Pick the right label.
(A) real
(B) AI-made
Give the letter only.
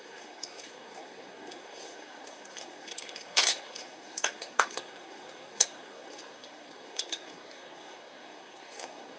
B